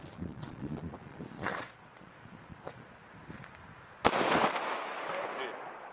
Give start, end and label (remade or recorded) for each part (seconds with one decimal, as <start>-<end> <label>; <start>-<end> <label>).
0.0-3.0 remade; 3.0-5.9 recorded